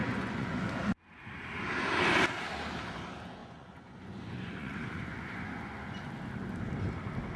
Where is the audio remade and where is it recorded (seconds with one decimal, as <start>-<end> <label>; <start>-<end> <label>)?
0.0-0.7 remade; 0.7-3.4 recorded; 3.4-6.1 remade; 6.1-7.4 recorded